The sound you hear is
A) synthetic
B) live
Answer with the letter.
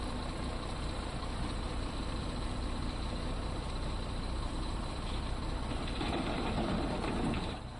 A